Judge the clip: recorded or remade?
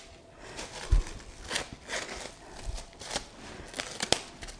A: recorded